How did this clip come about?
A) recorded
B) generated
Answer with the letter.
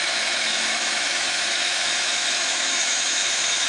B